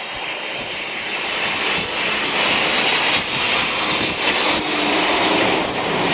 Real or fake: fake